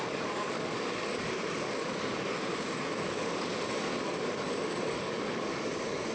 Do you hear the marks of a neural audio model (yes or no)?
yes